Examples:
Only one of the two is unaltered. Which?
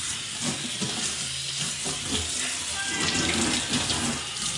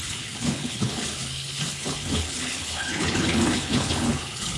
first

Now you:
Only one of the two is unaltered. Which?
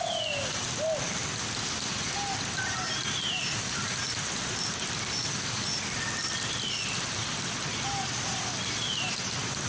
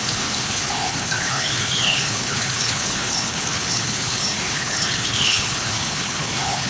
first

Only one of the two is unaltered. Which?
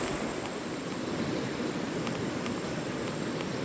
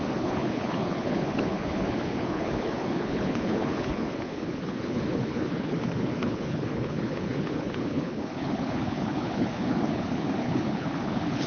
first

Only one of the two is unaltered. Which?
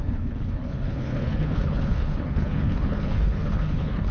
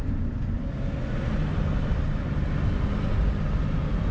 second